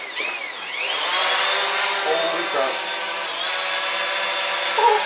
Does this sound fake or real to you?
real